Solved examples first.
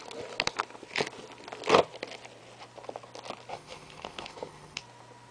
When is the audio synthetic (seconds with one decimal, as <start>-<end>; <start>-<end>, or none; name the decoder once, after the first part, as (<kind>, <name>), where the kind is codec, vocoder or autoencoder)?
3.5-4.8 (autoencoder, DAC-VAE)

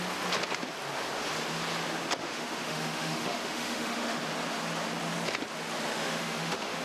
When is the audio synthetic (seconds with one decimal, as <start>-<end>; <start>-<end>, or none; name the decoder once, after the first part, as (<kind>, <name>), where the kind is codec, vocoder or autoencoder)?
2.2-4.2 (autoencoder, DAC-VAE); 5.9-6.8

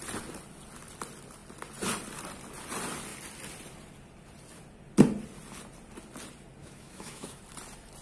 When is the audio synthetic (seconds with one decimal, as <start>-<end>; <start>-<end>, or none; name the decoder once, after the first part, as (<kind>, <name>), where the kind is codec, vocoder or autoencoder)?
6.6-7.4 (autoencoder, DAC-VAE)

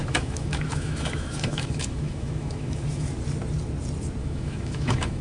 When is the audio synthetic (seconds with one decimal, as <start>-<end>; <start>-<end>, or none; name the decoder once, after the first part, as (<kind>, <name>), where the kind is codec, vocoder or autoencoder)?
0.0-3.1 (autoencoder, DAC-VAE); 4.2-5.2

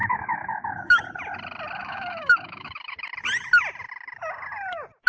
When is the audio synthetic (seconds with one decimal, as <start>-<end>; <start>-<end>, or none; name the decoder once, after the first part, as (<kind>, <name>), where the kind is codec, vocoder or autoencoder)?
0.0-1.0 (autoencoder, DAC-VAE); 1.8-2.7

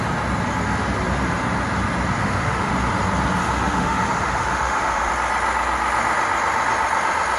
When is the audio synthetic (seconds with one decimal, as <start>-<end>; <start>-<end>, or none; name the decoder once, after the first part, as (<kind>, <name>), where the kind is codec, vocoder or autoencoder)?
2.2-2.7 (autoencoder, DAC-VAE); 3.4-5.1